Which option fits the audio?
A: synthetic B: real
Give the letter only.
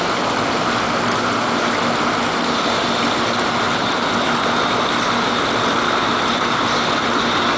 B